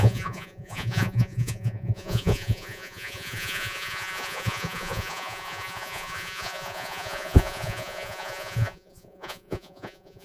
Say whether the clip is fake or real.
fake